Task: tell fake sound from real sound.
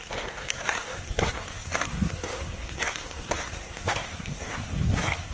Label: fake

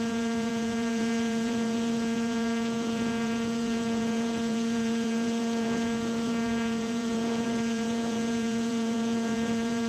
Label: fake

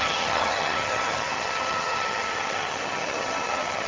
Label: fake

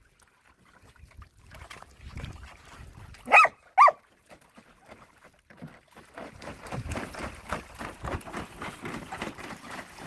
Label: real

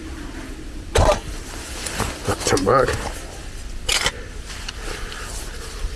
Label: real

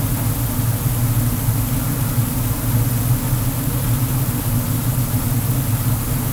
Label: real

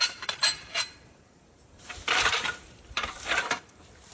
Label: fake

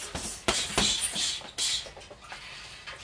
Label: real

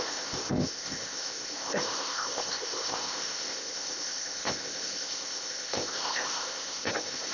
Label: fake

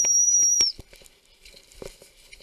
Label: real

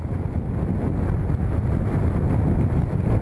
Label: real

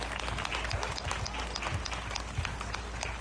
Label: real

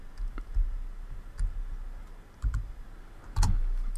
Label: real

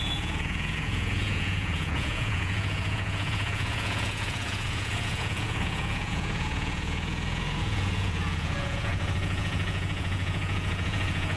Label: fake